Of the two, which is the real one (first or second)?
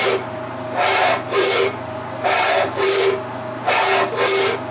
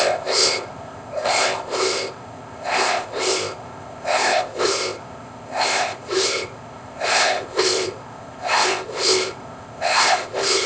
first